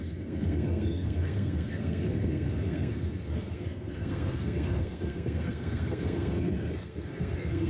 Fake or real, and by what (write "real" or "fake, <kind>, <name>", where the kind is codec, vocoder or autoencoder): fake, codec, SNAC